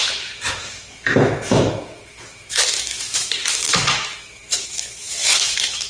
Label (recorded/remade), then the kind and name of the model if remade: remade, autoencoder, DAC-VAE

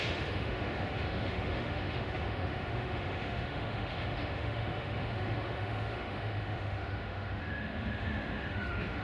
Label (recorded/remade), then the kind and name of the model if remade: remade, autoencoder, DAC-VAE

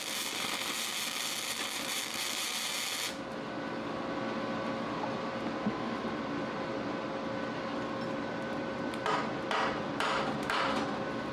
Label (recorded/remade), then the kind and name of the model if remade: recorded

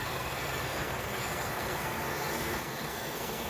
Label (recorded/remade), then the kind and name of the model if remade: remade, codec, SNAC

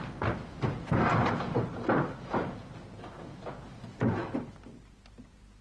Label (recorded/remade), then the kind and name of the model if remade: recorded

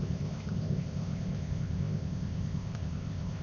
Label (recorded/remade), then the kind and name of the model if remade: remade, codec, ZipCodec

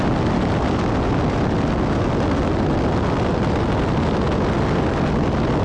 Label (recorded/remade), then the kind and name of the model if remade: recorded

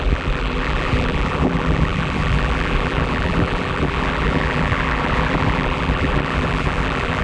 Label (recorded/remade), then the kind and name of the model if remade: remade, vocoder, BigVGAN v2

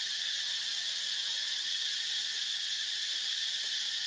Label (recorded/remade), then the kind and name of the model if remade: recorded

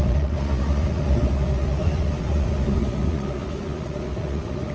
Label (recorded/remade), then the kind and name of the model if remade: remade, vocoder, Vocos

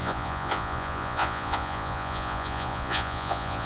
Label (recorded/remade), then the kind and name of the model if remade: remade, vocoder, Vocos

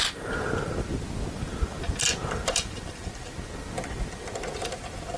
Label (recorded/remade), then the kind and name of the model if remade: recorded